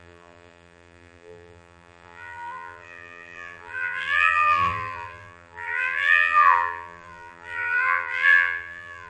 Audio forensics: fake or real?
fake